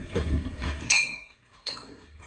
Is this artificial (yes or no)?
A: yes